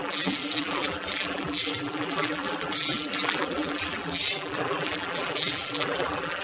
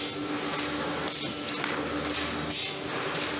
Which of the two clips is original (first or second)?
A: second